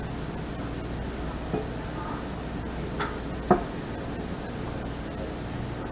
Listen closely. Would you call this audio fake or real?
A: real